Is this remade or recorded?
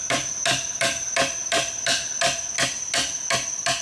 recorded